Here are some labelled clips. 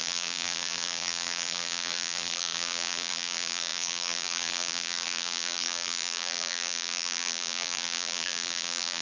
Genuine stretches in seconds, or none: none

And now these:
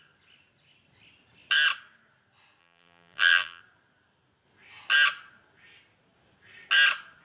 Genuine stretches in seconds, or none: 0.0-2.6; 3.6-7.2